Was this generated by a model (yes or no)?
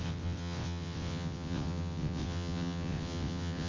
yes